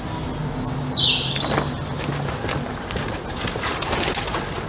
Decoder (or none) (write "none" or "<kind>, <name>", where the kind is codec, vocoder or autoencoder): none